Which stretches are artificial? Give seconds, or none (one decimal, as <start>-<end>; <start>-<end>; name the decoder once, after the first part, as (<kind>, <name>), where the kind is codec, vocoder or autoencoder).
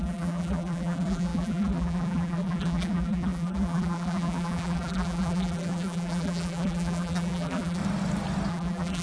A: 0.0-7.8 (vocoder, BigVGAN v2); 8.5-9.0